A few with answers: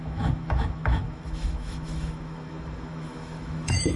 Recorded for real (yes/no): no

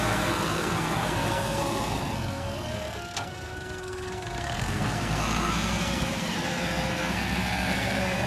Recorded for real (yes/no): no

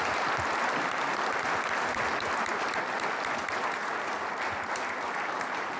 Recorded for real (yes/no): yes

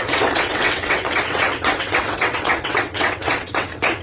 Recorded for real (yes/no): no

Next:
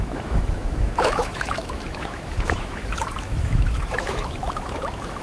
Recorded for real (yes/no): no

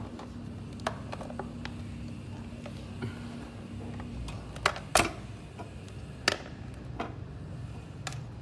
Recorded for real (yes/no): yes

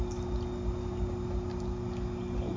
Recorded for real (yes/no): yes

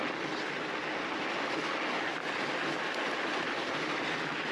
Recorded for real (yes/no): yes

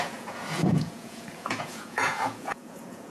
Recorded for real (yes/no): no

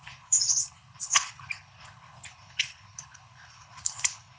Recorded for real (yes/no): no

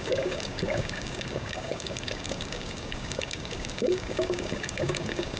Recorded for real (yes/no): no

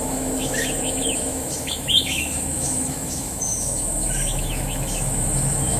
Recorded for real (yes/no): no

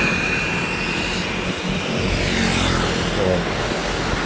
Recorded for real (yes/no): yes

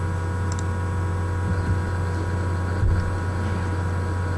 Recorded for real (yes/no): yes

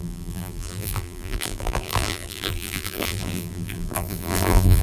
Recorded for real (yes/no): no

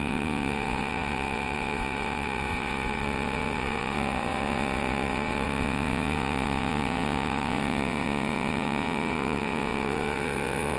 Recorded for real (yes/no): no